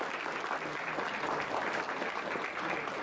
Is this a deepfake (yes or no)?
no